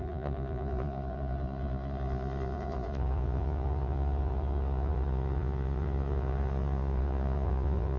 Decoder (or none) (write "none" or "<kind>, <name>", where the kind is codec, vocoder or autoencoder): vocoder, Vocos